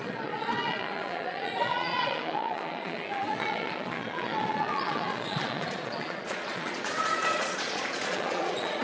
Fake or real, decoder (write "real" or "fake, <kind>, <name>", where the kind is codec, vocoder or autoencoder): fake, vocoder, Vocos